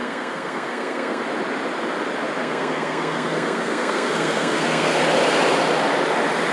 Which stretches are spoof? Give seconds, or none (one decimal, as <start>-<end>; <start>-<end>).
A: 0.0-1.2; 2.4-5.0